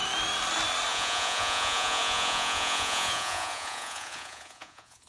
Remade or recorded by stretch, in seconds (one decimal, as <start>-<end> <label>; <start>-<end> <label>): 0.0-0.9 recorded; 0.9-5.1 remade